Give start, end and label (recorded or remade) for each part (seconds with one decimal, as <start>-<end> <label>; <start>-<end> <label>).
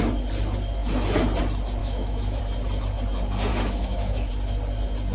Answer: 0.0-1.8 recorded; 1.8-2.4 remade; 2.4-3.5 recorded; 3.5-4.3 remade; 4.3-5.1 recorded